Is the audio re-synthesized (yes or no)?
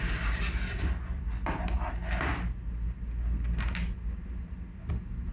no